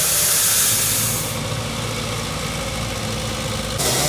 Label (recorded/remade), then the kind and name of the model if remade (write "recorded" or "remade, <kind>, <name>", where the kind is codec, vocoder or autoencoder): recorded